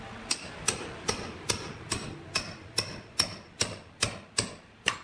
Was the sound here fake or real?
real